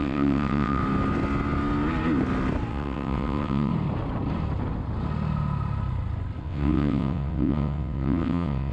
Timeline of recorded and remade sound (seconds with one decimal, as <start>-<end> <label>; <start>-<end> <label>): 0.0-0.8 remade; 0.8-2.7 recorded; 2.7-3.7 remade; 3.7-6.4 recorded; 6.4-8.7 remade